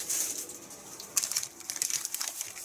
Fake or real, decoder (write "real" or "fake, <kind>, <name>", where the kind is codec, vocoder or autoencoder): real